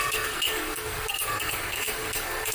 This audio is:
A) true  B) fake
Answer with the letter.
B